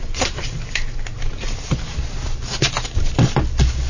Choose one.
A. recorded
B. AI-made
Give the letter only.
A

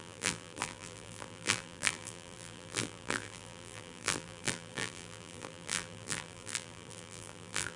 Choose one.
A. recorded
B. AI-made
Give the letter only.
B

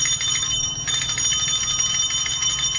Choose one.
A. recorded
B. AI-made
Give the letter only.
A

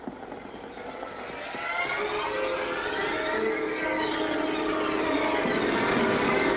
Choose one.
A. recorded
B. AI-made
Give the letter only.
A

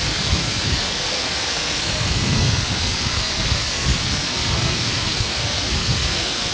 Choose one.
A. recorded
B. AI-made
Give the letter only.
B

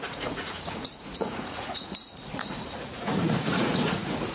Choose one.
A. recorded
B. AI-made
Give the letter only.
B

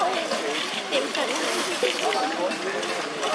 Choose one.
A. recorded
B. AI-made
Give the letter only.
B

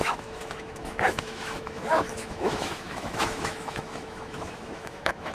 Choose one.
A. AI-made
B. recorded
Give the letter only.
A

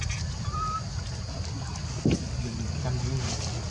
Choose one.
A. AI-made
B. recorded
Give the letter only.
B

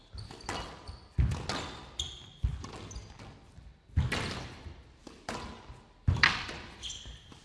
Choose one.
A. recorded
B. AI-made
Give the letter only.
A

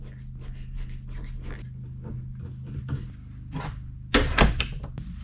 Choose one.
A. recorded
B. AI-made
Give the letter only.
A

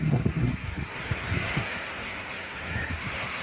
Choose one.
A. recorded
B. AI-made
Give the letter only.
B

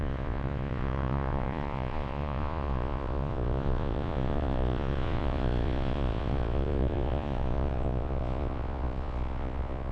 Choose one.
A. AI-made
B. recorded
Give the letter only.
A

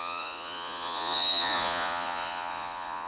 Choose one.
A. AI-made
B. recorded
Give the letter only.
A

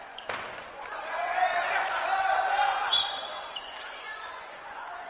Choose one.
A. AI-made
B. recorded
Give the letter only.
A